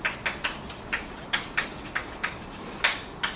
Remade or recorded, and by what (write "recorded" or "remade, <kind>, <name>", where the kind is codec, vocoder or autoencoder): remade, vocoder, BigVGAN v2